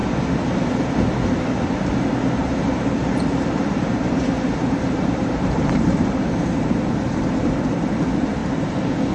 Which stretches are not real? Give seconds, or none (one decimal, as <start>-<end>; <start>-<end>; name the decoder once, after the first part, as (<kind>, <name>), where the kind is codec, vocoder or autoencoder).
2.4-7.4 (vocoder, BigVGAN v2); 8.4-9.1